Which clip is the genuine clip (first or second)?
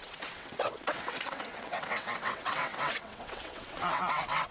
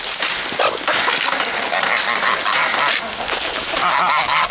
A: second